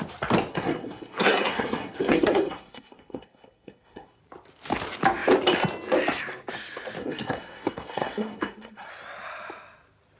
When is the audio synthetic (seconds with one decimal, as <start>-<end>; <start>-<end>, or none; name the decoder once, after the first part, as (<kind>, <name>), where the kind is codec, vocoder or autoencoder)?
0.5-4.2 (codec, SNAC); 7.0-8.9